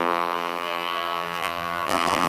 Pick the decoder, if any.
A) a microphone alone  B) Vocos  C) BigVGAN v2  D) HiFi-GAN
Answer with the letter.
C